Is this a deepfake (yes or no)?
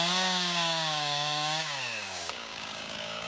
yes